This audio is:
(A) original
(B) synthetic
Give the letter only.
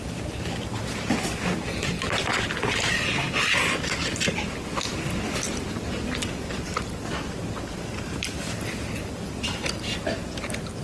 A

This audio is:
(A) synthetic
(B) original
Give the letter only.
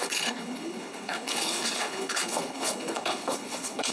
A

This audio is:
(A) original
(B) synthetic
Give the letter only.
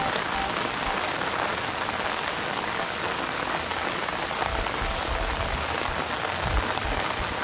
A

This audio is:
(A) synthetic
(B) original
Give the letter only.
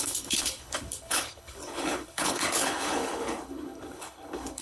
A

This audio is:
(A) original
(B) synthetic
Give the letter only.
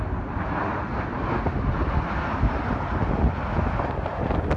A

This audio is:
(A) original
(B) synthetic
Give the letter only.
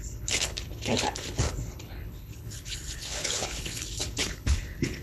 B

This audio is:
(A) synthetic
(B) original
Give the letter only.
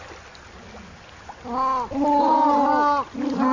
B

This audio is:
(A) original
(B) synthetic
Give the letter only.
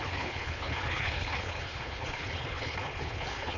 B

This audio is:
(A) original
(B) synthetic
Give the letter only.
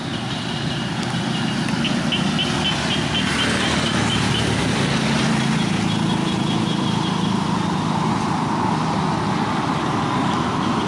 A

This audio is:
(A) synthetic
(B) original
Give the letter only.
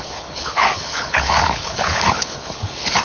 A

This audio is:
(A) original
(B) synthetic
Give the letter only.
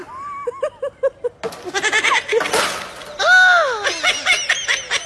A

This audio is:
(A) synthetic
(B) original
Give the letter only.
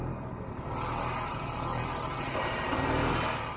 B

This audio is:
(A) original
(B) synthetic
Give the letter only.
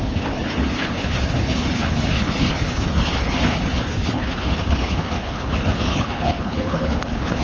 B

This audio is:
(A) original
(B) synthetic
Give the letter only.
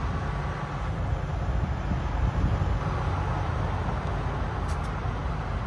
A